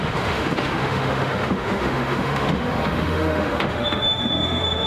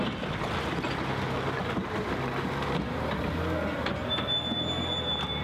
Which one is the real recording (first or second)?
second